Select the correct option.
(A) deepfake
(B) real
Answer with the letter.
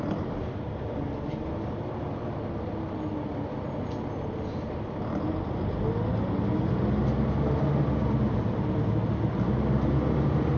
B